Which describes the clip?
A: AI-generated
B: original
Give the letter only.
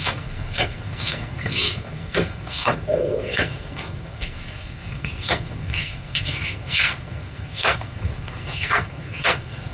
A